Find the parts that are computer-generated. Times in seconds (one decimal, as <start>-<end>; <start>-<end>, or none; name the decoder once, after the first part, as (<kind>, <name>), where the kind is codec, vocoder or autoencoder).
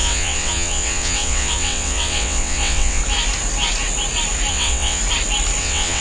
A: 0.0-3.0 (vocoder, WaveNeXt); 4.5-5.0; 5.6-6.0